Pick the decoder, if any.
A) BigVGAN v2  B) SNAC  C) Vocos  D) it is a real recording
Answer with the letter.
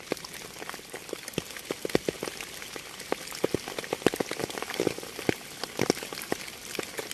D